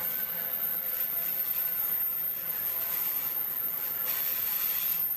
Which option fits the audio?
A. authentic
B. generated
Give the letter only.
B